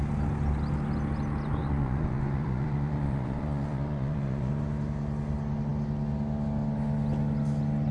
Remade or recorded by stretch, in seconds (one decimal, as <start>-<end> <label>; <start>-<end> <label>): 0.0-1.6 recorded; 1.6-4.5 remade; 4.5-7.9 recorded